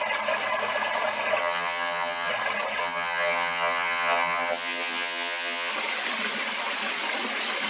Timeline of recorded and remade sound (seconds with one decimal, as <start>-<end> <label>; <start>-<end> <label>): 0.0-1.4 recorded; 1.4-2.3 remade; 2.3-2.8 recorded; 2.8-5.7 remade; 5.7-7.7 recorded